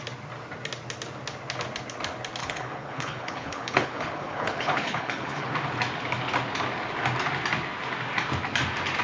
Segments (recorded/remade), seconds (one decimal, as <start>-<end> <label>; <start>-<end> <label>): 0.0-2.4 recorded; 2.4-5.5 remade; 5.5-9.0 recorded